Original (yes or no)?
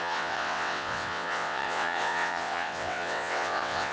no